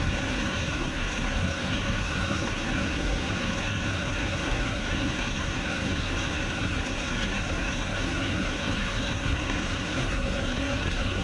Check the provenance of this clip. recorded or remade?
remade